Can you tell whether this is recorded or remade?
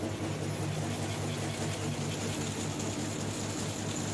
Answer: recorded